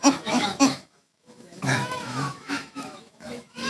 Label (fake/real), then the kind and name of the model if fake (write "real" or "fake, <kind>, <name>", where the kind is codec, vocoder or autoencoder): fake, autoencoder, DAC-VAE